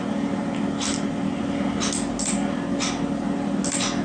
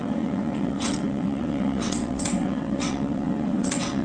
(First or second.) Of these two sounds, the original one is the first